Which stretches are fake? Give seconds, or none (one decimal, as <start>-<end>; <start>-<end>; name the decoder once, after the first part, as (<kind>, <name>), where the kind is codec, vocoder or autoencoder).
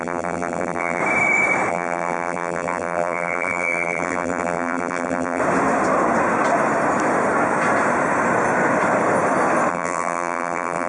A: 0.0-1.0 (vocoder, BigVGAN v2); 1.7-5.4; 9.7-10.9